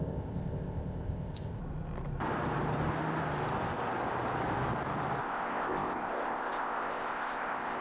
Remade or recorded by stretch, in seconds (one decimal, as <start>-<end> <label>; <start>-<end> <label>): 0.0-1.6 remade; 1.6-5.2 recorded; 5.2-7.8 remade